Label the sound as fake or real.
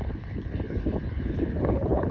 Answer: fake